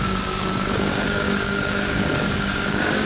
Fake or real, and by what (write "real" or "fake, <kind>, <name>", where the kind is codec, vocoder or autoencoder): fake, codec, DAC